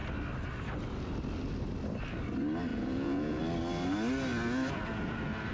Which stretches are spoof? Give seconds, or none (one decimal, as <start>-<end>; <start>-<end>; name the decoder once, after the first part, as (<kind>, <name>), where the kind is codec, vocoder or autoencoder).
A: 2.7-3.4 (vocoder, Vocos)